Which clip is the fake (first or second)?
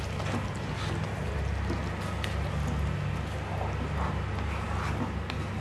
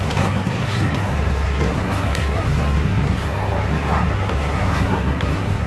second